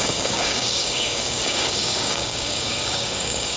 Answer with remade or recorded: remade